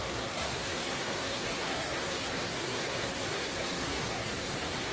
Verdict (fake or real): fake